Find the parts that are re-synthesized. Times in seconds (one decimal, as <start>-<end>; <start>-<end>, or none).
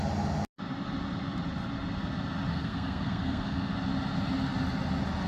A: 2.5-3.7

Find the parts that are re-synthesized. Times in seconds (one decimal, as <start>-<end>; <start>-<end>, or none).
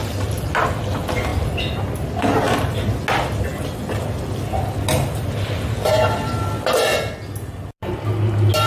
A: none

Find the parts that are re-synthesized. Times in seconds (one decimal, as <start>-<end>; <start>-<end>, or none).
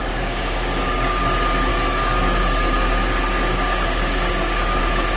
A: 0.0-1.2; 1.7-4.8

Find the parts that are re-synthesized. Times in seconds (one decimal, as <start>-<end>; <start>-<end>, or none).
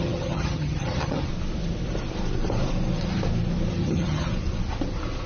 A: 0.0-1.3; 3.7-4.3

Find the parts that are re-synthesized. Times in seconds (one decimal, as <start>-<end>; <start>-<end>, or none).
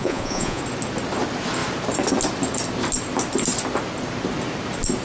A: 0.0-0.6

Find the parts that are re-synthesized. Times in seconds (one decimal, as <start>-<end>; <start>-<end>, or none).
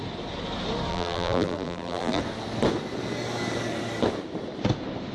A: 0.9-2.2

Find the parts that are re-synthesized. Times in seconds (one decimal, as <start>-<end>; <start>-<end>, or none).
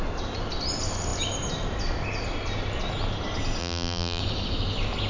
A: 3.6-4.2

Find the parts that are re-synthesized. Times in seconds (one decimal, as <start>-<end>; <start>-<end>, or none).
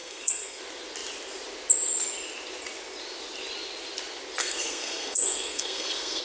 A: 0.0-0.6; 4.4-6.2